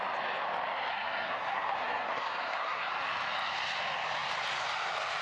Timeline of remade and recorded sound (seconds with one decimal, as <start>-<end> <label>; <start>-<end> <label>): 0.0-0.9 recorded; 0.9-2.9 remade; 2.9-5.2 recorded